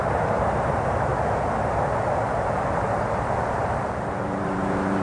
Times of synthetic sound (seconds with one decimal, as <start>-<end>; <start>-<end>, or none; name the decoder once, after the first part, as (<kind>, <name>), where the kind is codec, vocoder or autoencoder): 0.0-1.1 (vocoder, BigVGAN v2); 2.1-5.0